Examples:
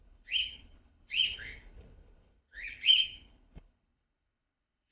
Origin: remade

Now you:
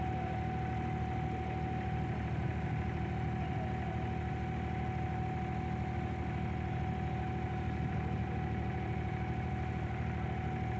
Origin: recorded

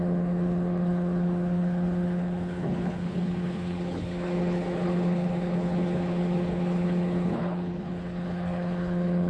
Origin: remade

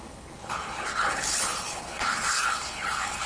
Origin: remade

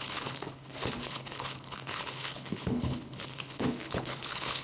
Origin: remade